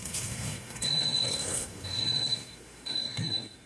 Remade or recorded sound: remade